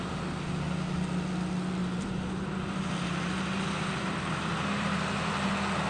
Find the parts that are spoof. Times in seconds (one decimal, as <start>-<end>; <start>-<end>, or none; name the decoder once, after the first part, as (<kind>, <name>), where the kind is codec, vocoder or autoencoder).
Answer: 1.8-5.3 (vocoder, BigVGAN v2)